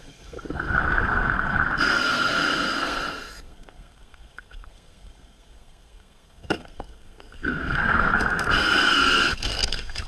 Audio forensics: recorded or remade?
remade